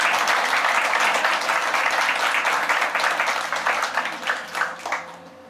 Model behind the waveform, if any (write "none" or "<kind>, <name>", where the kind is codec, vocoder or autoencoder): none